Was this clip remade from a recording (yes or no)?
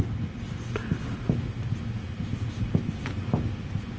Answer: no